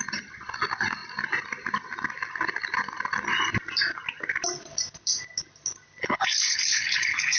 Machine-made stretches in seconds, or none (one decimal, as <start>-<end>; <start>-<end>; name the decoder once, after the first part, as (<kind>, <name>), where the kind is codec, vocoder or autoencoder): 6.0-7.4 (codec, HILCodec)